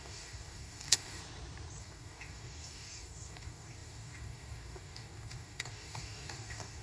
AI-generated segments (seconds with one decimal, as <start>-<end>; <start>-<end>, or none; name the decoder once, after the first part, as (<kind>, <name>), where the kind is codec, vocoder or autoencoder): 0.0-1.2 (codec, DAC); 1.8-6.8